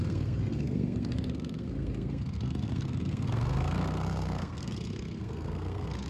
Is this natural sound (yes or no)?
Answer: no